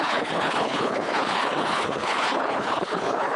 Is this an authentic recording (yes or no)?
no